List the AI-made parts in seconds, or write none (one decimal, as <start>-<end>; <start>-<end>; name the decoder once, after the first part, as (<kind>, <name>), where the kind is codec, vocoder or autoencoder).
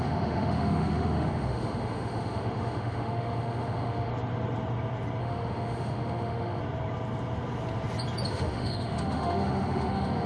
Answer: 0.0-4.1 (autoencoder, DAC-VAE); 5.2-6.6; 8.3-10.3